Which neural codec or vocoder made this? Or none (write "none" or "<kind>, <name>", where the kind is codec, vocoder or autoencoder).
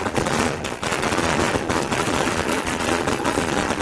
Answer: vocoder, Vocos